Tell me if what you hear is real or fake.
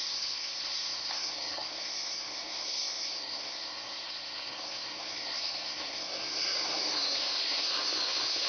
fake